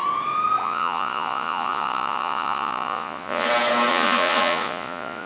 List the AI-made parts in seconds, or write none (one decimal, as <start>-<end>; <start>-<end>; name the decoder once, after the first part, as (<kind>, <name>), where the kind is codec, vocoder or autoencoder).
0.6-3.5 (vocoder, Vocos); 3.9-5.3